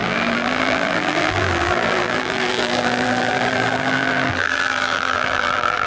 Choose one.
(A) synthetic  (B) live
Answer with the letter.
A